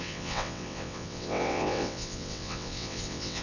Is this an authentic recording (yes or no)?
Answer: no